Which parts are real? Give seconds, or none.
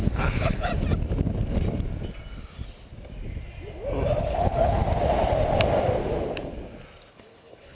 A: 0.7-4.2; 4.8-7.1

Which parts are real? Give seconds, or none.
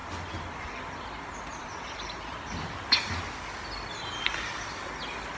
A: 0.0-5.4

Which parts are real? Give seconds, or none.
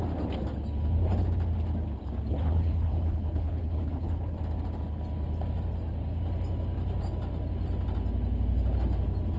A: 0.0-2.3; 4.4-9.4